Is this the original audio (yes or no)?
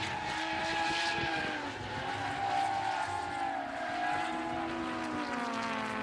yes